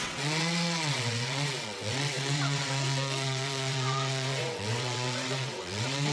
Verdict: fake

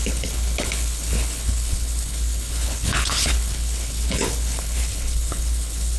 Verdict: fake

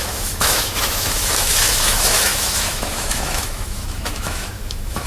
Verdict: fake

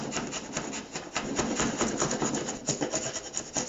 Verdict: real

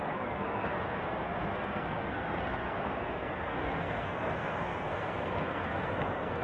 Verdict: fake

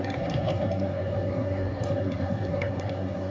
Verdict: fake